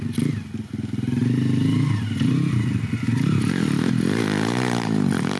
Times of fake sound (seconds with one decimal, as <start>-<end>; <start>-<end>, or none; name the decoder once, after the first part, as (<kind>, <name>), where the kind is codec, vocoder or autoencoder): none